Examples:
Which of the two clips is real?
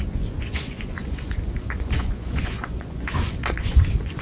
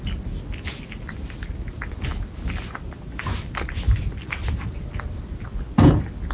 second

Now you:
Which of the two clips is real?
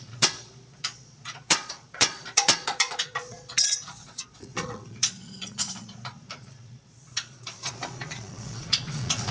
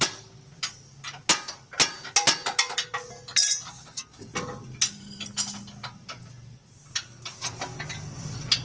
second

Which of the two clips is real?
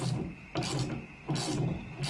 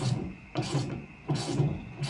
first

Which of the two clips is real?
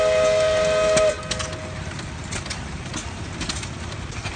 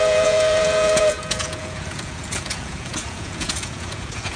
first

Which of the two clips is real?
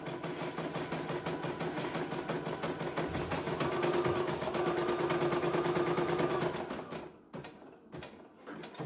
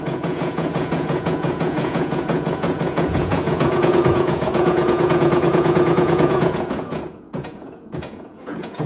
first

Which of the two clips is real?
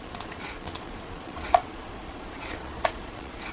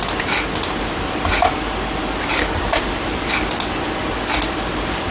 second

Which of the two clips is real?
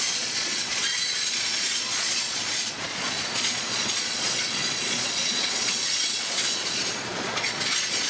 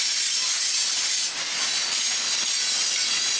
second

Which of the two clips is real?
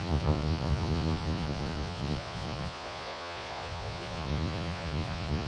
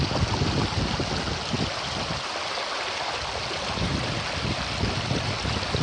second